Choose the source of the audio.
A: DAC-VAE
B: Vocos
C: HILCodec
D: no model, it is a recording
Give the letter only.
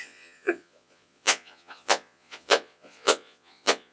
B